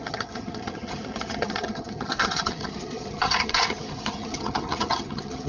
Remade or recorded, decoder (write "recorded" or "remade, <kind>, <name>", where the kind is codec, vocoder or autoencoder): remade, vocoder, HiFi-GAN